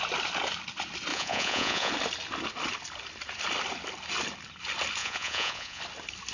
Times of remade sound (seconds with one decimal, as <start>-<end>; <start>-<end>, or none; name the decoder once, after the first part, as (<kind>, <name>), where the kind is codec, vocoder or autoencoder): 1.1-1.9 (vocoder, Vocos); 5.0-5.8